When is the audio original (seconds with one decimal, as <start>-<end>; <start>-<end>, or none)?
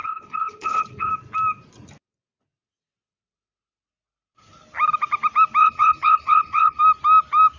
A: 1.1-5.6; 6.8-7.6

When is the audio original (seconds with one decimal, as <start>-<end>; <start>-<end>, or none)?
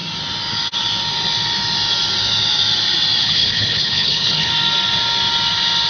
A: 0.0-3.2; 4.5-5.9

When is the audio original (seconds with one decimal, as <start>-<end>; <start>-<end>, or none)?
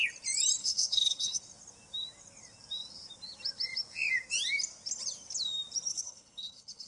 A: 0.0-0.6; 1.4-5.9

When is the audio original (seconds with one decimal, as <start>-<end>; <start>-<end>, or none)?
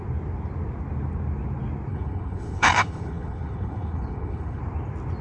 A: 0.0-1.9; 4.6-5.2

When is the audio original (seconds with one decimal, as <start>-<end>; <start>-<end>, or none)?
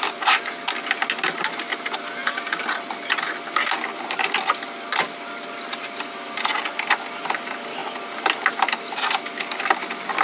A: 0.0-10.2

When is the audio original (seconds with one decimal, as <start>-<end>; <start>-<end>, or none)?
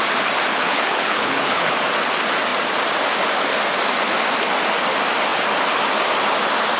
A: 0.0-0.5; 1.7-6.8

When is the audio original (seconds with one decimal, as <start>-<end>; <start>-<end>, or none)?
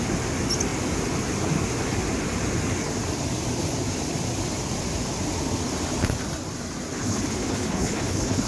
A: 0.0-6.9